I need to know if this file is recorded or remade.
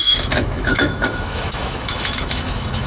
remade